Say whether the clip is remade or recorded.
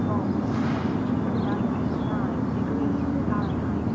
recorded